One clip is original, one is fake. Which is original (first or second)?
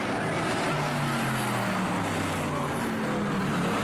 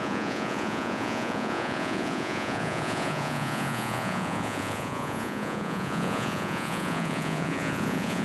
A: first